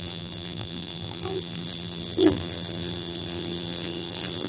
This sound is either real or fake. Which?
fake